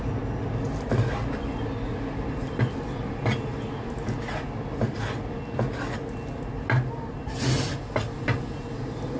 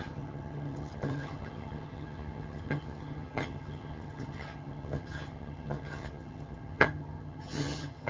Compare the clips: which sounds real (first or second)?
first